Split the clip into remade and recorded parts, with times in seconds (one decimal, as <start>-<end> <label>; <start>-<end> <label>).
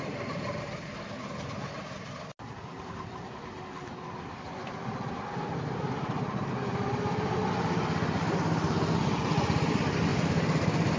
0.0-2.7 recorded; 2.7-3.7 remade; 3.7-10.1 recorded; 10.1-11.0 remade